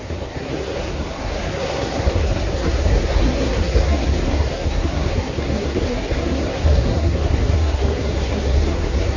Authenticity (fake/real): fake